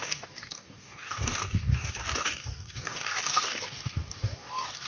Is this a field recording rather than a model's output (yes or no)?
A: no